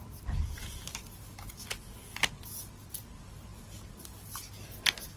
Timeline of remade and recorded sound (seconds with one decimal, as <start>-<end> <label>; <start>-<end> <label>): 0.0-5.2 recorded